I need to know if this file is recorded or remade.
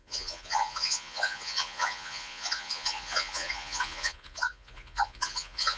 remade